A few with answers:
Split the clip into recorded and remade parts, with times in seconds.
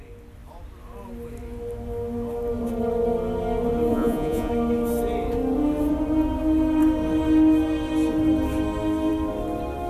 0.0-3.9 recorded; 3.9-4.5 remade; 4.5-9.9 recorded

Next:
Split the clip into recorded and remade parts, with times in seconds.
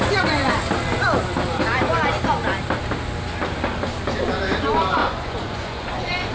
0.0-5.0 recorded; 5.0-6.3 remade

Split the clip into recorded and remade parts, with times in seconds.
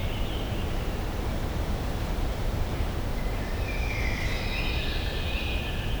0.0-3.6 remade; 3.6-6.0 recorded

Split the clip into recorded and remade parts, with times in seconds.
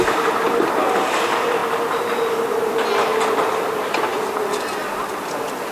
0.0-5.7 recorded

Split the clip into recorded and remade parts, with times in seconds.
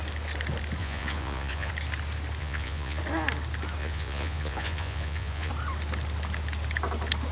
0.0-0.8 recorded; 0.8-1.7 remade; 1.7-2.4 recorded; 2.4-3.0 remade; 3.0-3.8 recorded; 3.8-5.5 remade; 5.5-7.3 recorded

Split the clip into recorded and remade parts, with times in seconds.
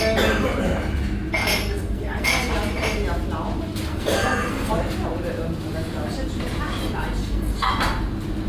0.0-1.6 recorded; 1.6-2.5 remade; 2.5-3.9 recorded; 3.9-4.7 remade; 4.7-7.2 recorded; 7.2-7.7 remade; 7.7-8.5 recorded